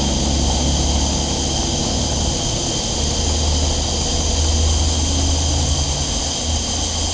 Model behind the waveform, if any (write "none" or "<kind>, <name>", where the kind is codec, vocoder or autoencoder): none